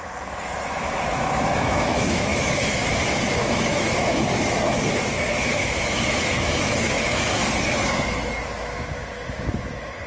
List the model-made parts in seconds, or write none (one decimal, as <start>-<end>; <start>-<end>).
0.0-7.4; 8.4-10.1